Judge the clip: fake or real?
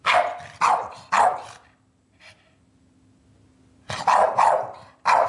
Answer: real